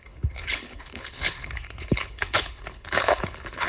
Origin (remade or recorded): remade